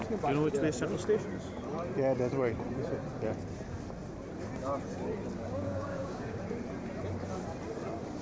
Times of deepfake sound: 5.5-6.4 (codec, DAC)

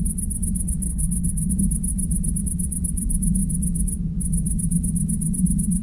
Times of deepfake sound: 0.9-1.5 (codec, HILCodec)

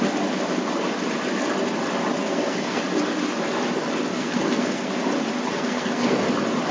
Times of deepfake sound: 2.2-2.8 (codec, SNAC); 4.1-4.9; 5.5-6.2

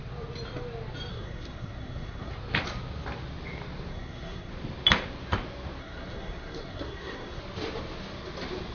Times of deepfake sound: 1.1-2.3 (codec, SNAC); 3.9-4.5; 5.8-7.4